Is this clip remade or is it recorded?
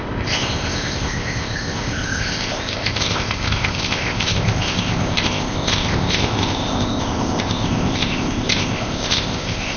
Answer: remade